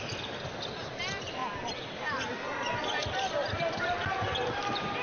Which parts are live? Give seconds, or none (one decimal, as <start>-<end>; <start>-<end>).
0.0-5.0